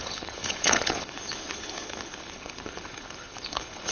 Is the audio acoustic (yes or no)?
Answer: no